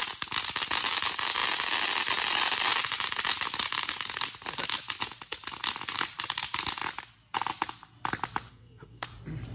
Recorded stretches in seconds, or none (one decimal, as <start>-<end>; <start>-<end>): 0.0-8.5; 9.1-9.5